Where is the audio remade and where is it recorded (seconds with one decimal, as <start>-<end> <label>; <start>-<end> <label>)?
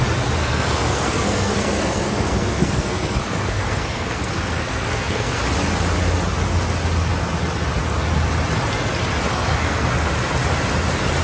0.0-0.4 recorded; 0.4-5.4 remade; 5.4-9.3 recorded; 9.3-9.9 remade; 9.9-11.2 recorded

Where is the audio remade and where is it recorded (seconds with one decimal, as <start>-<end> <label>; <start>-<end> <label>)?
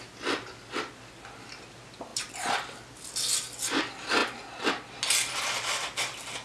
0.0-6.4 recorded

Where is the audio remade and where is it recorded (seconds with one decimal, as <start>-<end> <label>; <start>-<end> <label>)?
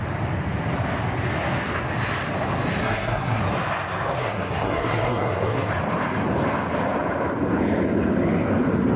0.0-2.8 recorded; 2.8-3.4 remade; 3.4-4.2 recorded; 4.2-5.7 remade; 5.7-9.0 recorded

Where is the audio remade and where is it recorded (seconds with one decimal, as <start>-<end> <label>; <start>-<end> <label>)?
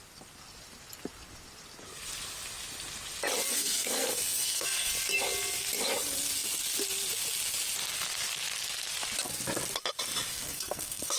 0.0-3.5 recorded; 3.5-4.9 remade; 4.9-10.3 recorded; 10.3-11.2 remade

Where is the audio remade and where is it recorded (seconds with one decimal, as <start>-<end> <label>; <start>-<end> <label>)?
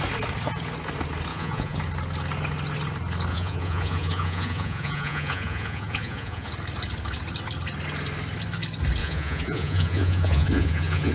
0.0-1.3 recorded; 1.3-1.8 remade; 1.8-3.3 recorded; 3.3-6.5 remade; 6.5-9.0 recorded; 9.0-11.1 remade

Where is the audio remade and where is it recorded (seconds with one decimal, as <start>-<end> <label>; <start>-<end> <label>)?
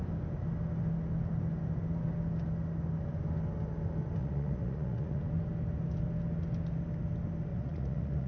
0.0-4.2 recorded; 4.2-5.2 remade; 5.2-7.5 recorded; 7.5-8.3 remade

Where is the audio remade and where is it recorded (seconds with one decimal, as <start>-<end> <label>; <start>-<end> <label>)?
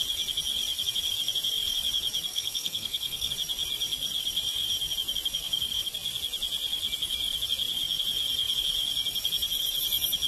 0.0-2.3 recorded; 2.3-3.3 remade; 3.3-10.3 recorded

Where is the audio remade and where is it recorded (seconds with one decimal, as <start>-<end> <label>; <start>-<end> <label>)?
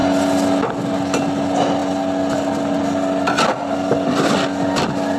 0.0-5.2 recorded